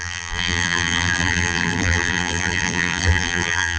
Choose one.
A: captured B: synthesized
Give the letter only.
B